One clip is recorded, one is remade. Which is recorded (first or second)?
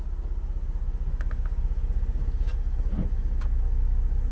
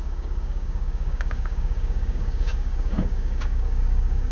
first